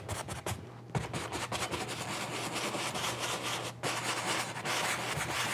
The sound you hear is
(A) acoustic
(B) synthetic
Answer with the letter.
A